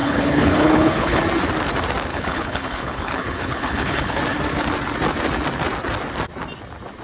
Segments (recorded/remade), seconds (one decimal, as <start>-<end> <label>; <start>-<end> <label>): 0.0-1.2 remade; 1.2-2.1 recorded; 2.1-4.2 remade; 4.2-7.0 recorded